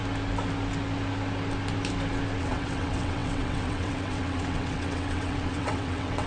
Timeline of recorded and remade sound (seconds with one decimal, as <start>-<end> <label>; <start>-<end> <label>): 0.0-2.4 recorded; 2.4-6.3 remade